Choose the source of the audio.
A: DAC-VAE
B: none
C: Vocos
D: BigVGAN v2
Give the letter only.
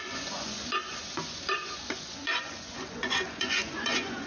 C